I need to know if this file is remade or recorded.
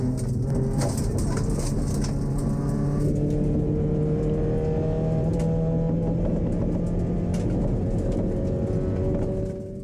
recorded